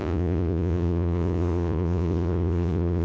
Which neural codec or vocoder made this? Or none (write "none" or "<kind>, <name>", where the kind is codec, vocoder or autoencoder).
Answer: vocoder, Vocos